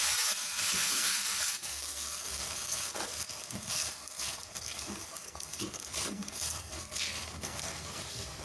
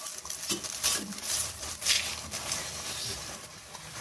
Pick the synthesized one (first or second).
first